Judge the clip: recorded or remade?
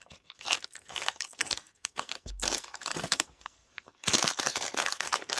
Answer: remade